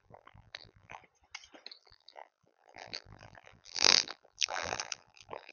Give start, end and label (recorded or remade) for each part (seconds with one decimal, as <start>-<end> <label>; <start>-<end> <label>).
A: 0.0-1.0 remade; 1.0-1.8 recorded; 1.8-5.5 remade